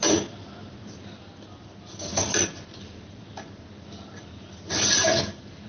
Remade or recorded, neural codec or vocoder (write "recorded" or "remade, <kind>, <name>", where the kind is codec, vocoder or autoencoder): recorded